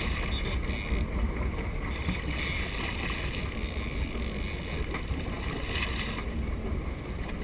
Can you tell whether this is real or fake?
real